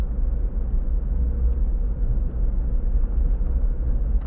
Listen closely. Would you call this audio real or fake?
real